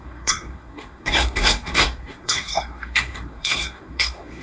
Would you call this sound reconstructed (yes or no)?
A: yes